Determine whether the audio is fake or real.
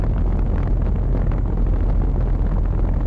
real